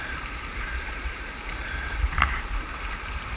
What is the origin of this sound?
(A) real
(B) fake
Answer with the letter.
B